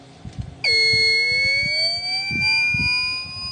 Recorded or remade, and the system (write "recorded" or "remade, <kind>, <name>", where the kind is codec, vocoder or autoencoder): recorded